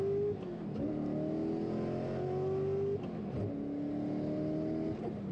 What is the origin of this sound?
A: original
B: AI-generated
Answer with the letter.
A